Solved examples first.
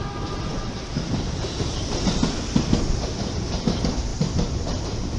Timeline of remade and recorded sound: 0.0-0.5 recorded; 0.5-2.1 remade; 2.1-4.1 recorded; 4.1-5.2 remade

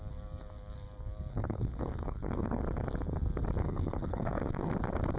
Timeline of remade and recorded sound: 0.0-1.3 recorded; 1.3-2.6 remade; 2.6-3.6 recorded; 3.6-4.7 remade; 4.7-5.2 recorded